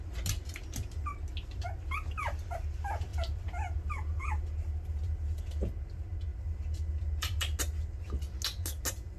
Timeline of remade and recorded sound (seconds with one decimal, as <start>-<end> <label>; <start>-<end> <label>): 0.0-3.1 recorded; 3.1-5.4 remade; 5.4-6.3 recorded; 6.3-7.6 remade; 7.6-9.2 recorded